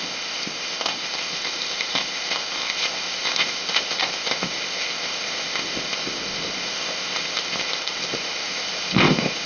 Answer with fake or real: fake